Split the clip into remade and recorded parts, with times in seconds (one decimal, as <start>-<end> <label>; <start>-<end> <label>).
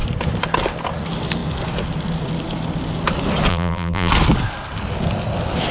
0.0-3.5 recorded; 3.5-4.1 remade; 4.1-5.7 recorded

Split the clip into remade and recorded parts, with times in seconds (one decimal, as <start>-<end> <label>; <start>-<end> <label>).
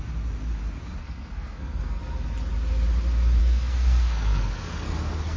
0.0-1.0 recorded; 1.0-2.0 remade; 2.0-3.4 recorded; 3.4-5.4 remade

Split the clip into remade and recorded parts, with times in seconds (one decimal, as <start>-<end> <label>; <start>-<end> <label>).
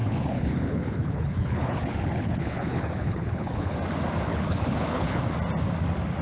0.0-3.7 remade; 3.7-4.3 recorded; 4.3-5.2 remade; 5.2-6.2 recorded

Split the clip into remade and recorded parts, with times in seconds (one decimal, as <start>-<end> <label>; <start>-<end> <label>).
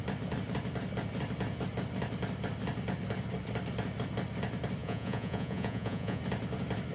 0.0-4.8 recorded; 4.8-6.2 remade; 6.2-6.9 recorded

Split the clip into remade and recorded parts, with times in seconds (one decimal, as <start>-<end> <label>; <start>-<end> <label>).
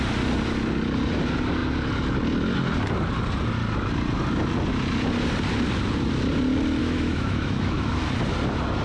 0.0-6.8 recorded; 6.8-8.0 remade; 8.0-8.8 recorded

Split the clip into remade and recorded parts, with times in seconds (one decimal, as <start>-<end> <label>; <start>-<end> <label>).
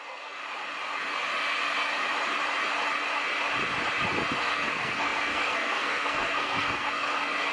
0.0-0.4 remade; 0.4-4.4 recorded; 4.4-7.5 remade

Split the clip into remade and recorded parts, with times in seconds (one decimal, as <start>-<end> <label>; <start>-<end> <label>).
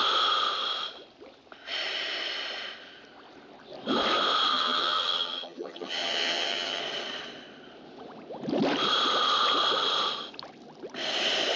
0.0-4.5 recorded; 4.5-6.8 remade; 6.8-11.6 recorded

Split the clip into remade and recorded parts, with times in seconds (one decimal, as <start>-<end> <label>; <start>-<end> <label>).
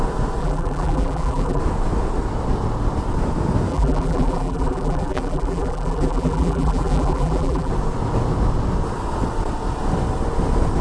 0.0-0.4 recorded; 0.4-1.6 remade; 1.6-3.7 recorded; 3.7-7.7 remade; 7.7-10.8 recorded